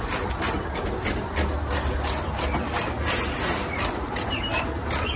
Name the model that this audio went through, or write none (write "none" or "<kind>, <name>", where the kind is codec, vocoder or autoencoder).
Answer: none